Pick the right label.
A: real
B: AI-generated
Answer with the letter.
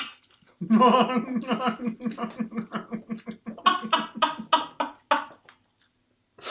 A